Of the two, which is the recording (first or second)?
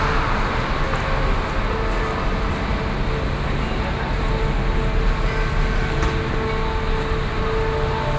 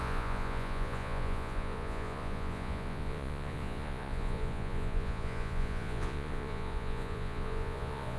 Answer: first